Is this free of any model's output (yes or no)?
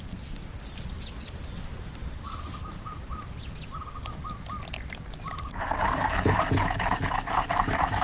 yes